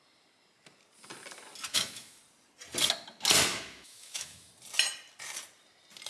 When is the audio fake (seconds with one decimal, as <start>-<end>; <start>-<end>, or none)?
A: 1.7-2.2; 3.5-4.5